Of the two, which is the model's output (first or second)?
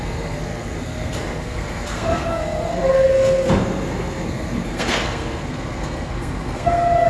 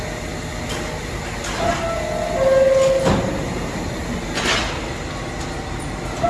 first